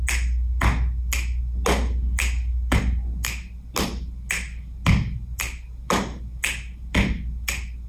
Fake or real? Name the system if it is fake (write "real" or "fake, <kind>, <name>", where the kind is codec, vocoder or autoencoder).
real